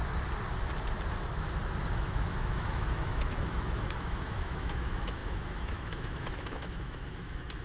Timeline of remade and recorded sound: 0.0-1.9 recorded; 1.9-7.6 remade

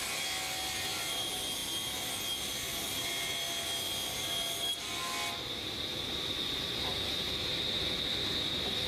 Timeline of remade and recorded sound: 0.0-8.9 recorded

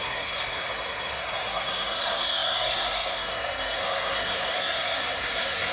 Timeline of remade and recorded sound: 0.0-5.7 remade

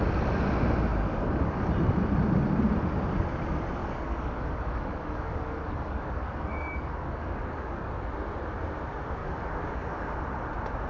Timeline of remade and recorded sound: 0.0-0.9 recorded; 0.9-1.7 remade; 1.7-3.8 recorded; 3.8-8.1 remade; 8.1-9.2 recorded; 9.2-10.2 remade; 10.2-10.9 recorded

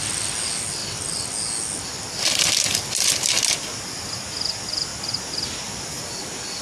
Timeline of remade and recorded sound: 0.0-6.6 recorded

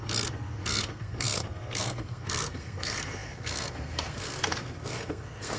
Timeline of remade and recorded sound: 0.0-5.6 remade

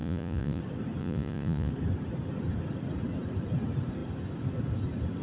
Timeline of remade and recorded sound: 0.0-0.6 remade; 0.6-1.0 recorded; 1.0-1.7 remade; 1.7-5.2 recorded